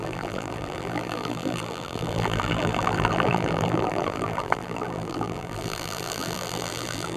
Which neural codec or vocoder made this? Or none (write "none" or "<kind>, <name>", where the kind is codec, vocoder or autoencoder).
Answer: vocoder, BigVGAN v2